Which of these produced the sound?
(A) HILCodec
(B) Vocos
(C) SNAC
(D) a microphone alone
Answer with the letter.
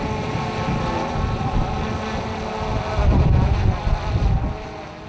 D